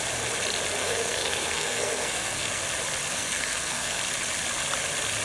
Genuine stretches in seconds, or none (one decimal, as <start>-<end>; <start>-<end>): 0.0-0.8; 2.6-3.1; 4.0-5.2